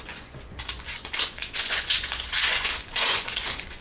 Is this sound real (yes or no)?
no